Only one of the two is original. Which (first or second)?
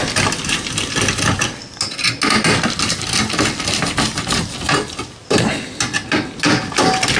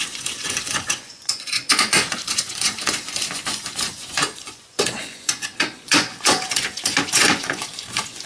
first